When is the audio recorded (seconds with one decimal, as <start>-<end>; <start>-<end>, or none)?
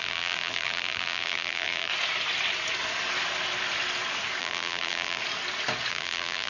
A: 1.9-4.4; 5.2-5.9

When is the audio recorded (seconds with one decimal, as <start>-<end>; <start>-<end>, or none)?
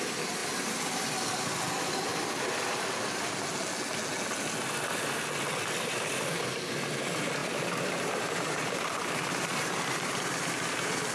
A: 2.1-6.5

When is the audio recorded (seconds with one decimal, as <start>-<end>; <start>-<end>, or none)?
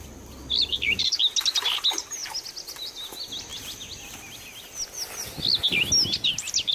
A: 0.0-0.7; 1.2-6.7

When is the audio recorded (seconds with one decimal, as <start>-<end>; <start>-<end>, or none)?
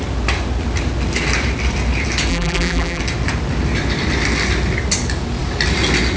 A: 0.0-2.3; 3.0-6.2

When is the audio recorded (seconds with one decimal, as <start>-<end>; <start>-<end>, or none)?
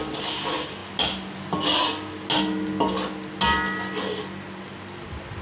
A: 0.0-5.4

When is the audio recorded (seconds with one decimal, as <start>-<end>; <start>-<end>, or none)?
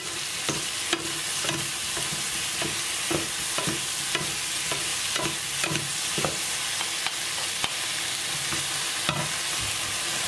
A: 0.0-10.3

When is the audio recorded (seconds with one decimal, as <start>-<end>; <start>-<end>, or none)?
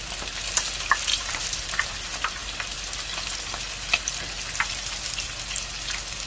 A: 0.0-1.1; 1.9-6.3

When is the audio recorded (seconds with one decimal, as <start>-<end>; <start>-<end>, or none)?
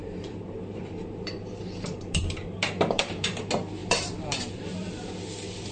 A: 3.4-3.8; 5.1-5.7